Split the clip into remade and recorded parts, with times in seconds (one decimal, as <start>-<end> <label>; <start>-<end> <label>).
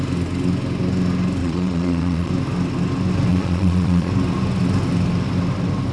0.0-1.4 recorded; 1.4-2.3 remade; 2.3-3.3 recorded; 3.3-4.1 remade; 4.1-5.9 recorded